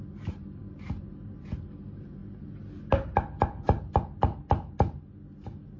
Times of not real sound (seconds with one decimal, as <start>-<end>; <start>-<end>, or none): none